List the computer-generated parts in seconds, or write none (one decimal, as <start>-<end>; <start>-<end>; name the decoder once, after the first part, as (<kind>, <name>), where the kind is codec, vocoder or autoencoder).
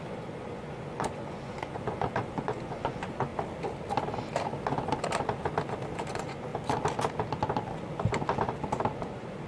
0.0-3.3 (vocoder, Vocos); 6.1-6.5; 9.0-9.5